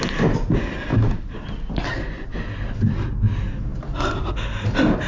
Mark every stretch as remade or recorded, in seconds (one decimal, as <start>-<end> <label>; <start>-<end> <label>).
0.0-5.1 recorded